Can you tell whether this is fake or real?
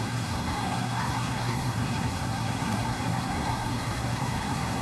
fake